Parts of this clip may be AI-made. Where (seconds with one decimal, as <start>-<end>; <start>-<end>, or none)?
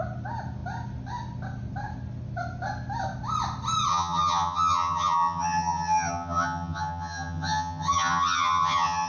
3.9-9.1